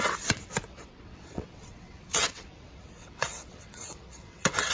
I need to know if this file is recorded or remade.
remade